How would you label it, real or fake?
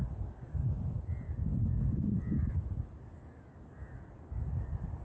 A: real